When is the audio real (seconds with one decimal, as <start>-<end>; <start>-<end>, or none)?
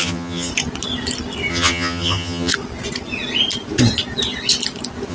0.5-1.5; 2.5-5.1